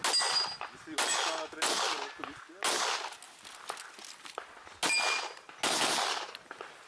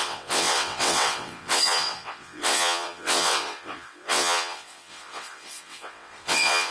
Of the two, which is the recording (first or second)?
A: first